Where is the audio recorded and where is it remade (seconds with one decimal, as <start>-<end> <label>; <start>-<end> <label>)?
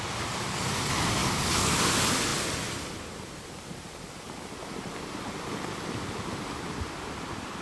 0.0-1.2 recorded; 1.2-1.9 remade; 1.9-7.6 recorded